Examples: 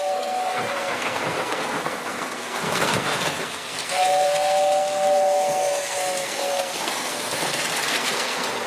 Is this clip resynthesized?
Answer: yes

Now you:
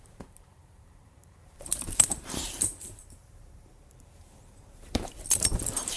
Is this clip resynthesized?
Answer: yes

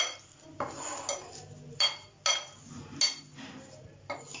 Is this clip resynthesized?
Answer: no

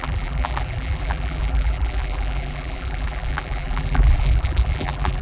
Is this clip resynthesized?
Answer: yes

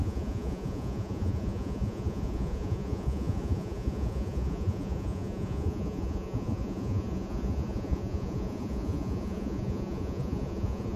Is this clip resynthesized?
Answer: yes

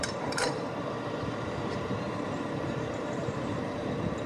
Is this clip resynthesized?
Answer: yes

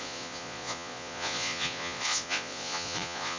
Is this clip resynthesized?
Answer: yes